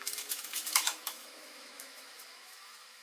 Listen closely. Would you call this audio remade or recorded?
remade